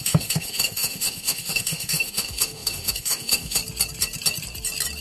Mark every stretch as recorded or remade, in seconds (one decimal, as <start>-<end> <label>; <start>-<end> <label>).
0.0-3.6 remade; 3.6-5.0 recorded